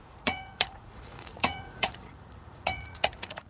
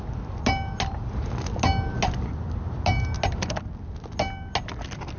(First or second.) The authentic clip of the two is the second